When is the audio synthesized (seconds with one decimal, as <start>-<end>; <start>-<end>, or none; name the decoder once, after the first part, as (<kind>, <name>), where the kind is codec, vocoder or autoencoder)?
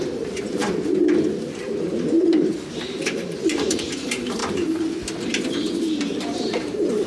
0.0-0.6 (vocoder, BigVGAN v2); 2.5-4.4; 5.7-7.1